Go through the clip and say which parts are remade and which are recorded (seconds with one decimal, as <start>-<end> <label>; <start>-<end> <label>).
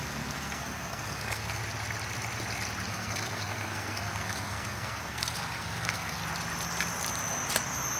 0.0-1.6 remade; 1.6-2.9 recorded; 2.9-6.2 remade; 6.2-8.0 recorded